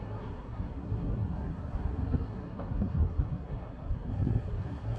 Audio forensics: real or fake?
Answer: fake